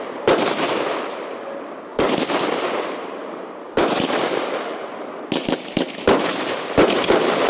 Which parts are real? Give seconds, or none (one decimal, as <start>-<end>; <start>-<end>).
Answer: 0.0-1.9; 5.6-7.5